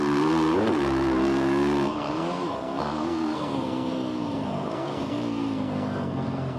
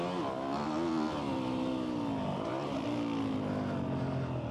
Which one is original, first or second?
second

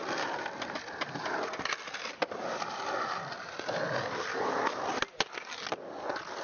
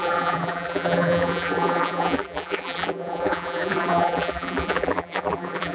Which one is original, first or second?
first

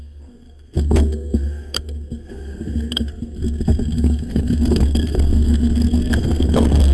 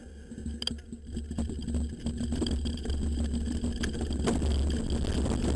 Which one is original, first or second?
second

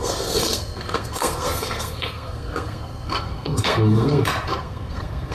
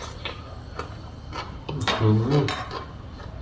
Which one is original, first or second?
second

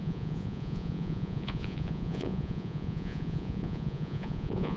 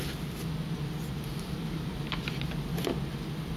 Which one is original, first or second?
second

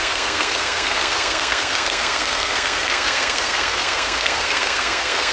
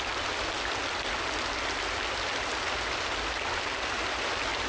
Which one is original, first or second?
second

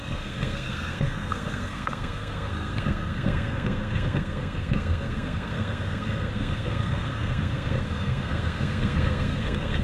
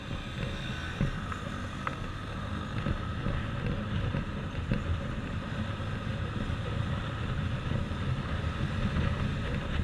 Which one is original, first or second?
second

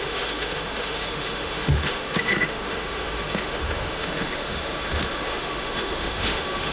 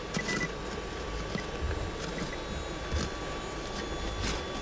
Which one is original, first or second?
second